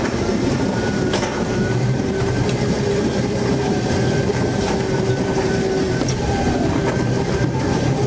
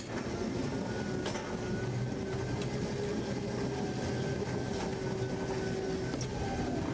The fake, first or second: first